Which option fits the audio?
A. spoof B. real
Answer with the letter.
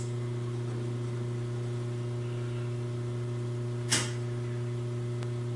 B